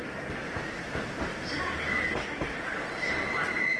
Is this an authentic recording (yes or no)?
yes